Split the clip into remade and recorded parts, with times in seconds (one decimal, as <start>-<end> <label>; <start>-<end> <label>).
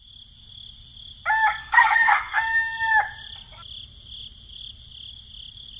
0.0-1.6 recorded; 1.6-2.4 remade; 2.4-5.8 recorded